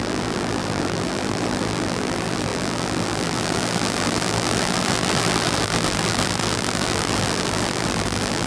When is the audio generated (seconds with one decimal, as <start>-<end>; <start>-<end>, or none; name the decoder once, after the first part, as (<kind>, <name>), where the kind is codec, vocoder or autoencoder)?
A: 0.0-8.5 (vocoder, BigVGAN v2)